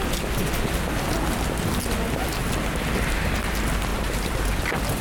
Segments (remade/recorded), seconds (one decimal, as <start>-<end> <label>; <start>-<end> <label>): 0.0-2.4 recorded; 2.4-2.9 remade; 2.9-3.9 recorded; 3.9-5.0 remade